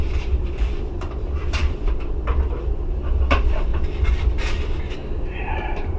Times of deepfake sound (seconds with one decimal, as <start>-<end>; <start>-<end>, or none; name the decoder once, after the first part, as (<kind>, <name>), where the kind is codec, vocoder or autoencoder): 0.0-3.7 (vocoder, BigVGAN v2); 4.8-6.0